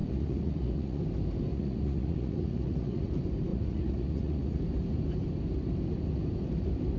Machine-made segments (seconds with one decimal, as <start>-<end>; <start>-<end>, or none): 0.0-1.0; 1.5-3.1; 3.5-4.6